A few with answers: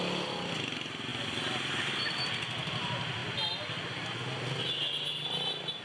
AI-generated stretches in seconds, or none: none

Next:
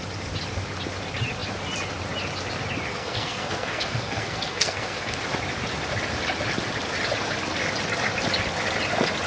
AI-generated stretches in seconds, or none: 2.9-5.2 (codec, SNAC)